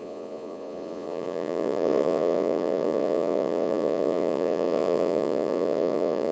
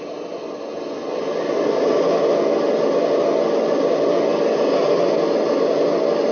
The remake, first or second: first